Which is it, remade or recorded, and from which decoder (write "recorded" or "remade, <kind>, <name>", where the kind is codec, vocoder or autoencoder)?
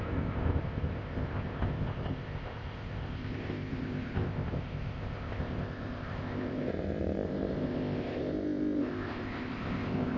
remade, codec, ZipCodec